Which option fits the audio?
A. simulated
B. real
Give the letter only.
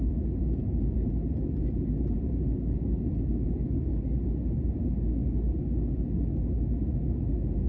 B